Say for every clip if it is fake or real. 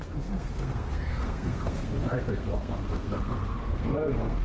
fake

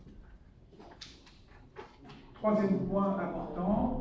real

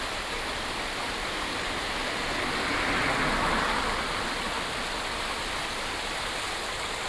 real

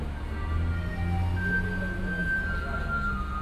real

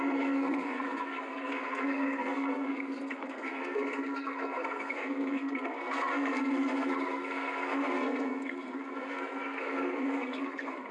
fake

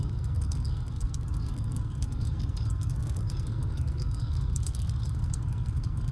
fake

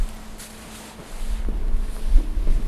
real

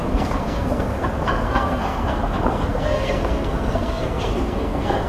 fake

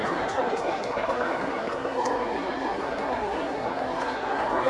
fake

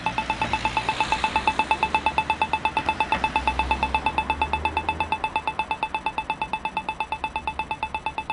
real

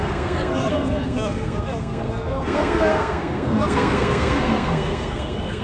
fake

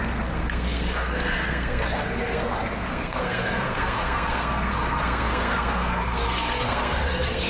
fake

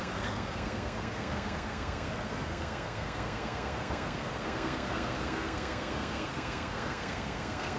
fake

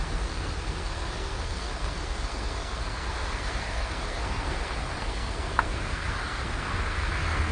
fake